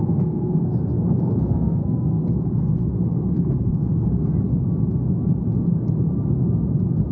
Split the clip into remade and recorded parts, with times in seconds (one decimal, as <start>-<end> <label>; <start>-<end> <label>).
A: 0.0-4.3 remade; 4.3-7.1 recorded